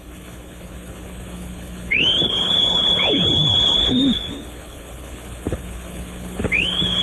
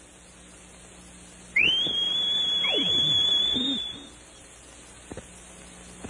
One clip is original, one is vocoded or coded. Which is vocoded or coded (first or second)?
first